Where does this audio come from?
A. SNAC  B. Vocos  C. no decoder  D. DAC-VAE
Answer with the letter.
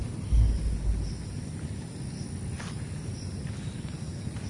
C